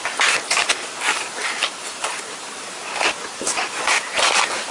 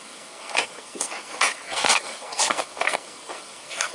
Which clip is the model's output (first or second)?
second